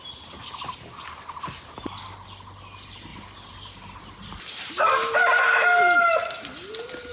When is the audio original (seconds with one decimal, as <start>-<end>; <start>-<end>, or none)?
0.0-7.1